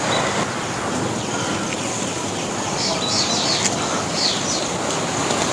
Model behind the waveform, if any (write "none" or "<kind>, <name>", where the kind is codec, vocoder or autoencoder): none